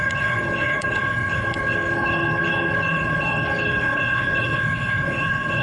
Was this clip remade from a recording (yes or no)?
yes